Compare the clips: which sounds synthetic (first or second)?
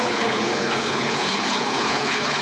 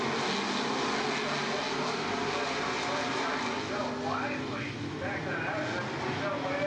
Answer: first